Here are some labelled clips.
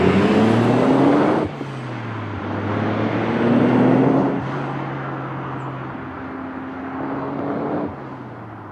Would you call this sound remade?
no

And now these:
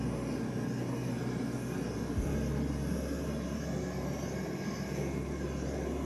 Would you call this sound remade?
no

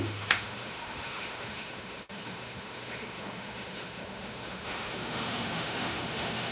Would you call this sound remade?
yes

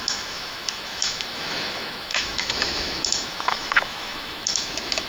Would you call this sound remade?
yes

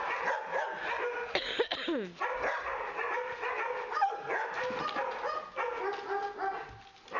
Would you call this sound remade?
no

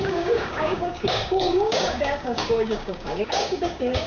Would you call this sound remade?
yes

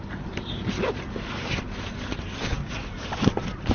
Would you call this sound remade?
no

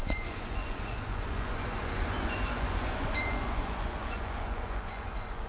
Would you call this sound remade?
yes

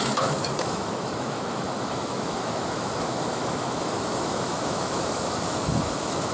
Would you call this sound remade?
yes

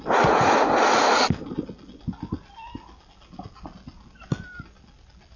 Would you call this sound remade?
no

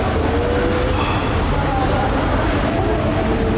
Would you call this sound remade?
no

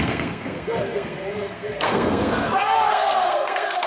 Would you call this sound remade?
yes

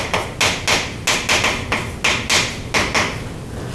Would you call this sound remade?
no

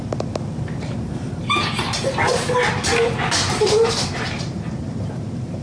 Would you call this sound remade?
no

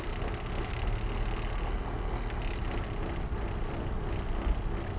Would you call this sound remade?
no